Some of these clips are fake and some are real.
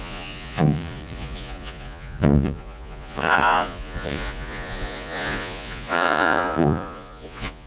fake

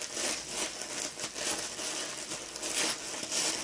real